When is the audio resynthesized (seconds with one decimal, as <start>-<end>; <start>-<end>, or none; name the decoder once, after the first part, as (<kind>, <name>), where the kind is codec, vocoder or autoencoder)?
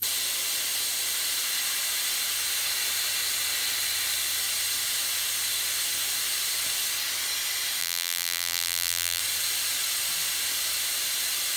7.8-9.2 (vocoder, BigVGAN v2)